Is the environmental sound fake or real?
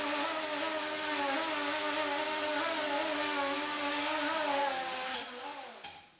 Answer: real